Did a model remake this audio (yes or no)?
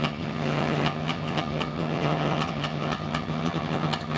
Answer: yes